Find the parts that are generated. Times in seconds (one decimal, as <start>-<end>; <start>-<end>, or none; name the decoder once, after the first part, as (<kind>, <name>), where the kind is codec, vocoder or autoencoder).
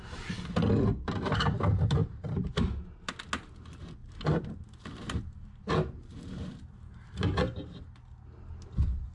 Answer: 2.0-2.5 (vocoder, BigVGAN v2); 4.0-7.7